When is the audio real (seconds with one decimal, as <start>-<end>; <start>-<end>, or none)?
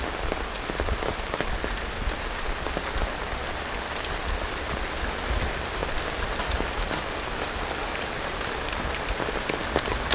0.0-10.1